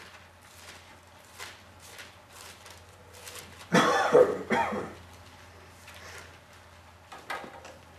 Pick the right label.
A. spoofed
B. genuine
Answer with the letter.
B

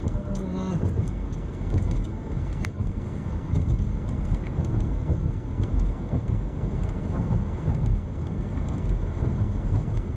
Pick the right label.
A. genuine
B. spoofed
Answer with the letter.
B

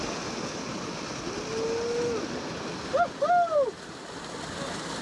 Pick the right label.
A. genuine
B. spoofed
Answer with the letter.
A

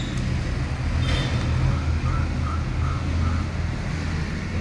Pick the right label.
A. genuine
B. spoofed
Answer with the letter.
A